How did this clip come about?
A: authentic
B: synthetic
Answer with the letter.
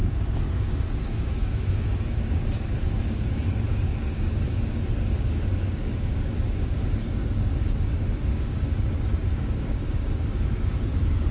B